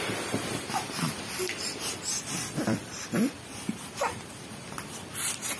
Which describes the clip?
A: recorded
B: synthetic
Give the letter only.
B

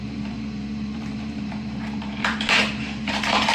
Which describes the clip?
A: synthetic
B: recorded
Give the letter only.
A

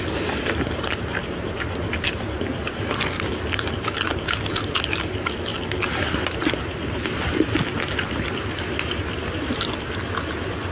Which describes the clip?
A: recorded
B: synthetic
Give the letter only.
A